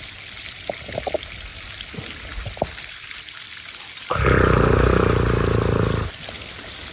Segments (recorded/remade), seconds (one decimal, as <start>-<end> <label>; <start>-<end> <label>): 0.0-6.9 recorded